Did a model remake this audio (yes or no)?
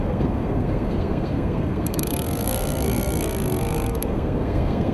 yes